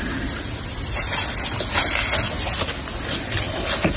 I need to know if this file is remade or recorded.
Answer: recorded